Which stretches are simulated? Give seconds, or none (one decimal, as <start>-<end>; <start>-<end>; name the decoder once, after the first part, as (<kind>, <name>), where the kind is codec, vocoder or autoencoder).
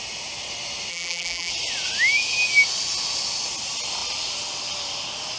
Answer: 0.9-1.5 (vocoder, BigVGAN v2)